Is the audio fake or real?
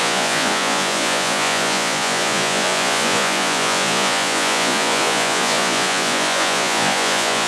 fake